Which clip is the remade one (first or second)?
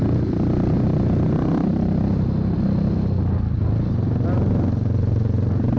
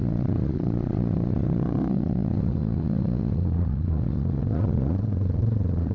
second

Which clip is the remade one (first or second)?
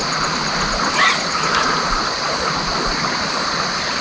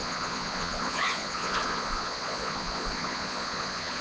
second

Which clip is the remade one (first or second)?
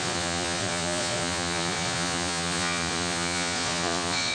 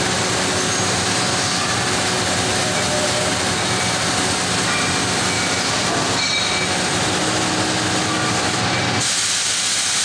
first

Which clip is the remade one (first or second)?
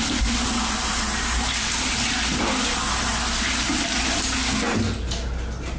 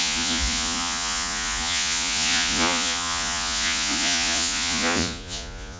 second